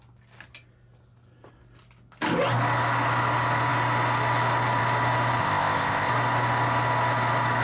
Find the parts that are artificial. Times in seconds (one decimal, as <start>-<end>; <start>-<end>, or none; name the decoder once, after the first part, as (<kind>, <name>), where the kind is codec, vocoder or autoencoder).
5.4-6.1 (codec, ZipCodec)